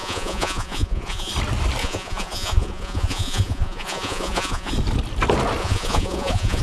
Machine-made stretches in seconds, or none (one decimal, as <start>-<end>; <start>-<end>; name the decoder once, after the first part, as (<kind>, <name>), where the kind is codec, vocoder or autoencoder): 0.0-1.3 (vocoder, Vocos); 1.8-4.7; 5.6-6.6